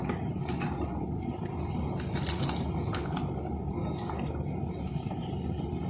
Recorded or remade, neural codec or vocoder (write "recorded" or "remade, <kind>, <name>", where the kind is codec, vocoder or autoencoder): recorded